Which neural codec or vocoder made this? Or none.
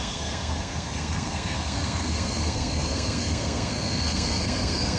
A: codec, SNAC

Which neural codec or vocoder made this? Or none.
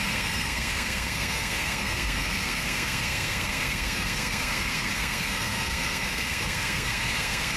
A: codec, SNAC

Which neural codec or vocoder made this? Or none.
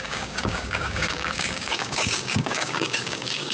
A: codec, DAC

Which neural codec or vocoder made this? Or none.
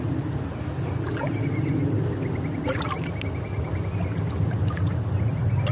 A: none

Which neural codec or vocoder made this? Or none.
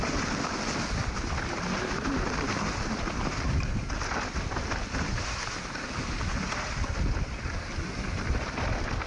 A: none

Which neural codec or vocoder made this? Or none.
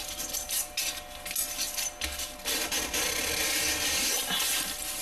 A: none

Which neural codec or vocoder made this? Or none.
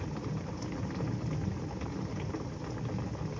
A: none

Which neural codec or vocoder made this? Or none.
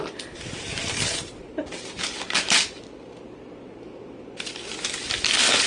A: vocoder, BigVGAN v2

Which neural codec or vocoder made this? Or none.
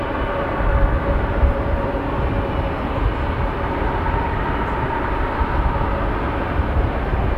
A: none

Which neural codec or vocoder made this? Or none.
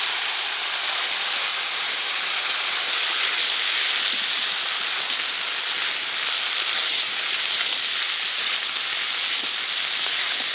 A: none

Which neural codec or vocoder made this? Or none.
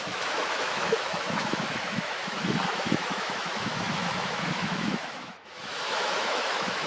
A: autoencoder, DAC-VAE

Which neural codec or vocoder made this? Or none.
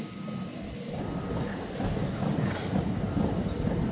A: none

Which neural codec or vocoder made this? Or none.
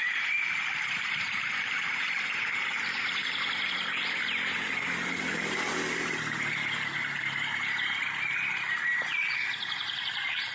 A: vocoder, BigVGAN v2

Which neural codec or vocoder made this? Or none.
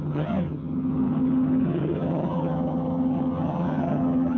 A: vocoder, HiFi-GAN